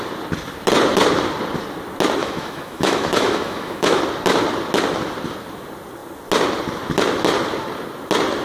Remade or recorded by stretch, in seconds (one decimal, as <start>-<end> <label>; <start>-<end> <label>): 0.0-2.2 recorded; 2.2-4.0 remade; 4.0-8.4 recorded